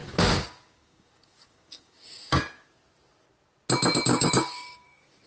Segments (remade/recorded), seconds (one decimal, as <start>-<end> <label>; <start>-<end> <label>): 0.0-2.7 remade; 2.7-4.1 recorded; 4.1-5.3 remade